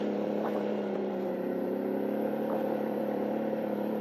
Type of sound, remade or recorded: remade